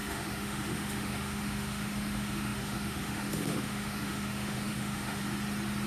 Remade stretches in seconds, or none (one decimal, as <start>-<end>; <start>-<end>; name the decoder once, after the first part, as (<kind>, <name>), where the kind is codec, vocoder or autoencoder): 0.0-5.2 (autoencoder, DAC-VAE)